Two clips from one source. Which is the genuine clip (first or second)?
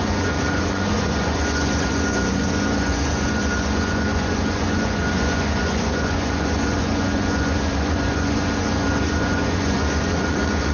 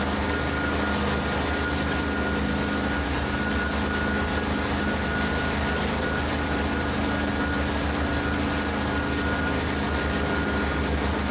second